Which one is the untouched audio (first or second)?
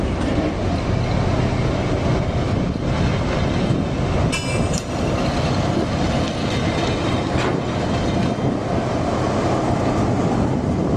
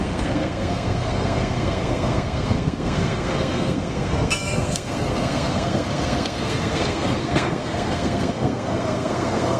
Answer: first